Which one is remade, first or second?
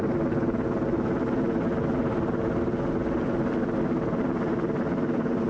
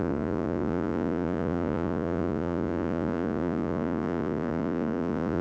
second